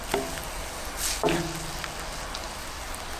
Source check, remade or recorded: recorded